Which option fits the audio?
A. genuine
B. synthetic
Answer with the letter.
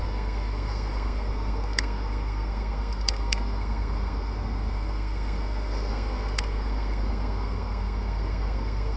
B